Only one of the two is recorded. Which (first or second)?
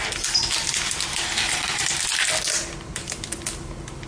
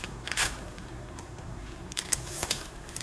first